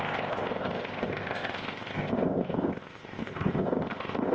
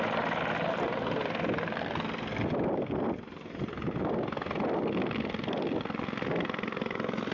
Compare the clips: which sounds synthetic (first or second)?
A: first